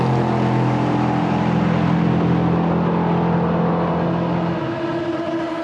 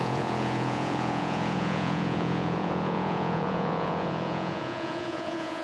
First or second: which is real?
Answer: first